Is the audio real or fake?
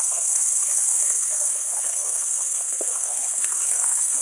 fake